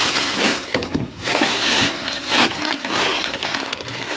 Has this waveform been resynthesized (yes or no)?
yes